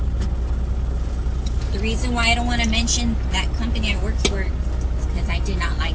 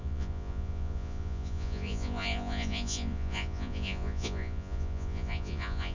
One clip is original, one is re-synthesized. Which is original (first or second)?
first